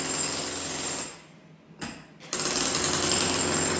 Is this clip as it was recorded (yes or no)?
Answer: yes